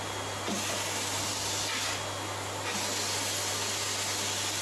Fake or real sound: real